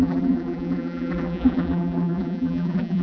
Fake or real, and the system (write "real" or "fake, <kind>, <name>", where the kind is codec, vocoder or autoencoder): fake, vocoder, BigVGAN v2